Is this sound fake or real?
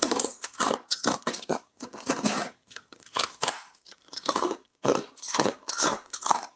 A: fake